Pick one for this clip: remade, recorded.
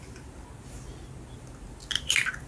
recorded